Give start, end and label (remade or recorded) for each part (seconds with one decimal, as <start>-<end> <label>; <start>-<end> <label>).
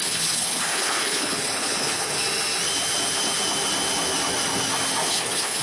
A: 0.0-2.2 remade; 2.2-5.1 recorded; 5.1-5.6 remade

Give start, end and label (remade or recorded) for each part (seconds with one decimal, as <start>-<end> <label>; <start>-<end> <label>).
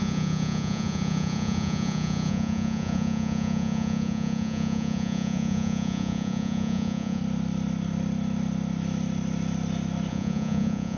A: 0.0-7.2 remade; 7.2-10.1 recorded; 10.1-11.0 remade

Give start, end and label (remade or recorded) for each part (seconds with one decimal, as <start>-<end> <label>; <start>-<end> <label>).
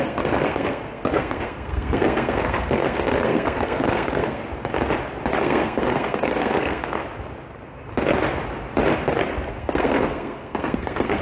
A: 0.0-4.4 remade; 4.4-5.3 recorded; 5.3-7.0 remade; 7.0-9.5 recorded; 9.5-11.2 remade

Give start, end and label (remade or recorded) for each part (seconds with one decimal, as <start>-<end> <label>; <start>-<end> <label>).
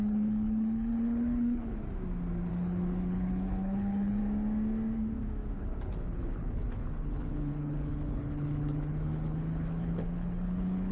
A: 0.0-1.8 remade; 1.8-2.5 recorded; 2.5-4.2 remade; 4.2-5.6 recorded; 5.6-10.9 remade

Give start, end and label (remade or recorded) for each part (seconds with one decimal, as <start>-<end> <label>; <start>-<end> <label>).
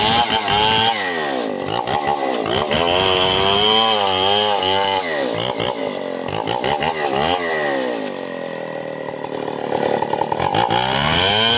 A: 0.0-11.6 recorded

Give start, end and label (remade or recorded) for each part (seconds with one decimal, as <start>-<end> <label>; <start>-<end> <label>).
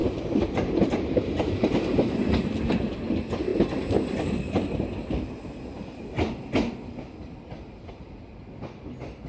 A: 0.0-2.1 remade; 2.1-9.3 recorded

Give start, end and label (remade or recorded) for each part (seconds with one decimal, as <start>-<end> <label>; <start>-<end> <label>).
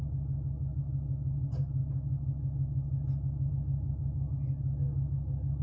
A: 0.0-5.6 recorded